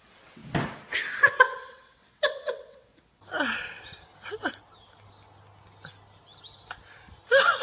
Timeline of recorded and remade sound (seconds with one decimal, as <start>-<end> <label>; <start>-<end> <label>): 0.0-0.4 remade; 0.4-1.3 recorded; 1.3-2.9 remade; 2.9-7.6 recorded